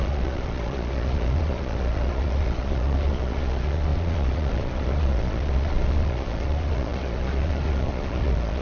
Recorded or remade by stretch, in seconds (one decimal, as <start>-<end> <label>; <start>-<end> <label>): 0.0-8.6 remade